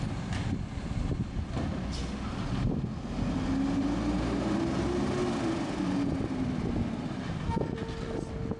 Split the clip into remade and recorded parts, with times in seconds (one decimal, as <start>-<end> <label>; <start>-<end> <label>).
0.0-8.6 recorded